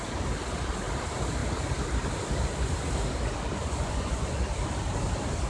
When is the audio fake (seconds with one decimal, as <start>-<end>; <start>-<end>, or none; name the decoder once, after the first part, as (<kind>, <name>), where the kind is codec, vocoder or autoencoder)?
3.6-4.4 (vocoder, Vocos)